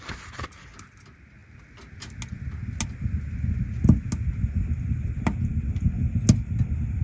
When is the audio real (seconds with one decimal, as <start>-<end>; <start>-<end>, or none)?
0.0-7.0